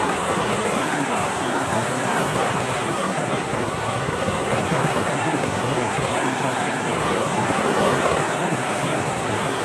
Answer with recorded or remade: remade